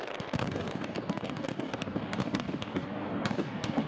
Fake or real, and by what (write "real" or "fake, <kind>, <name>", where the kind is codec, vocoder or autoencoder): fake, codec, DAC